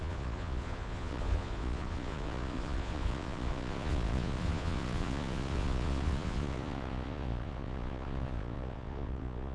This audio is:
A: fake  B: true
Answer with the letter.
A